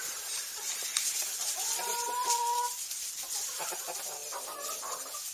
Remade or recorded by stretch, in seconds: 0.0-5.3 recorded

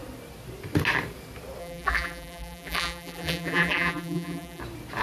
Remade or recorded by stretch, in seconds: 0.0-1.6 recorded; 1.6-4.6 remade; 4.6-5.0 recorded

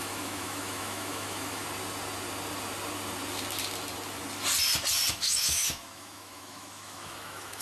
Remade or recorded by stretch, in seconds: 0.0-1.6 remade; 1.6-5.1 recorded; 5.1-7.6 remade

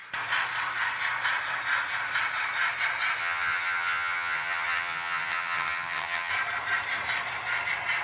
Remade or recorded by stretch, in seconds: 0.0-3.2 recorded; 3.2-6.3 remade; 6.3-8.0 recorded